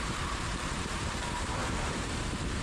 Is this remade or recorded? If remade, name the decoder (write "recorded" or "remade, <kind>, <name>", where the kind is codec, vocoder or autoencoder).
remade, vocoder, BigVGAN v2